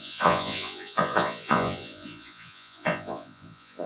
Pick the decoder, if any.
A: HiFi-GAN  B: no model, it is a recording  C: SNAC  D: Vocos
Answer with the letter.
D